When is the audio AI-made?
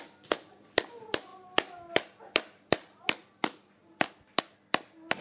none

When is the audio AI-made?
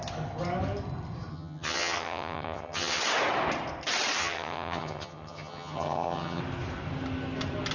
1.3-3.0; 4.2-6.4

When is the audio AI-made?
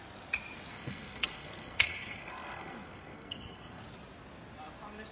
0.7-3.8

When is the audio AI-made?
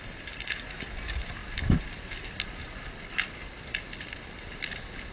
none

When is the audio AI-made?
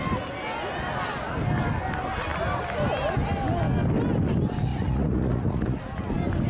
4.7-5.8